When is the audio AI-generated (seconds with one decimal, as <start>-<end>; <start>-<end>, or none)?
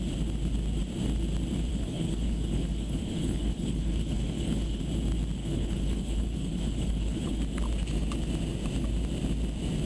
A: 1.7-4.8; 5.4-7.4